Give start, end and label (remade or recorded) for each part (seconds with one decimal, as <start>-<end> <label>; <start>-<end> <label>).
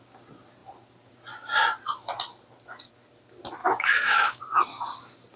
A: 0.0-3.6 recorded; 3.6-4.4 remade; 4.4-5.4 recorded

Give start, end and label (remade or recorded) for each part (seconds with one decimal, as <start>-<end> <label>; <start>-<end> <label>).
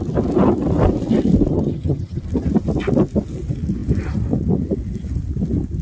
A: 0.0-1.5 recorded; 1.5-2.2 remade; 2.2-5.8 recorded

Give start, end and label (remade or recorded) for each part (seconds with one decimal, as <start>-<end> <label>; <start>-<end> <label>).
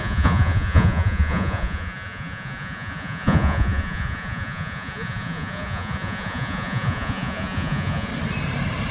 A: 0.0-8.1 remade; 8.1-8.9 recorded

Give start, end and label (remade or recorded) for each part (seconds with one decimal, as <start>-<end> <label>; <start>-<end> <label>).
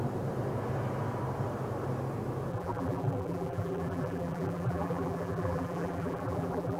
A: 0.0-2.5 recorded; 2.5-6.8 remade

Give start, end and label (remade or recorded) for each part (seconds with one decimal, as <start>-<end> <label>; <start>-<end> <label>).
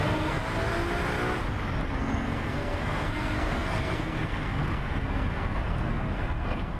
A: 0.0-0.4 remade; 0.4-1.9 recorded; 1.9-6.8 remade